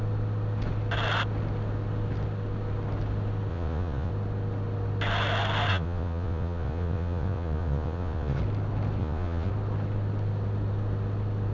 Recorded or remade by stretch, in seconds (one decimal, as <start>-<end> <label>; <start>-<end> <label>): 0.0-3.5 recorded; 3.5-4.1 remade; 4.1-5.7 recorded; 5.7-8.4 remade; 8.4-9.0 recorded; 9.0-9.5 remade; 9.5-11.5 recorded